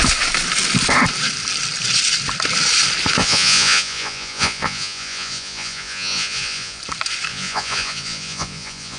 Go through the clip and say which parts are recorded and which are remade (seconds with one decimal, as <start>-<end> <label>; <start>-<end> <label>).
0.0-3.2 recorded; 3.2-6.8 remade; 6.8-7.3 recorded; 7.3-9.0 remade